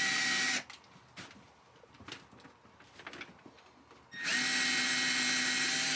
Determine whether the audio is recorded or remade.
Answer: recorded